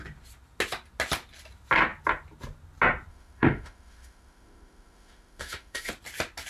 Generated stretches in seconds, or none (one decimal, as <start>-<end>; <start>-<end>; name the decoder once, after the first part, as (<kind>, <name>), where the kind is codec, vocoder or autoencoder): 3.1-5.9 (autoencoder, DAC-VAE)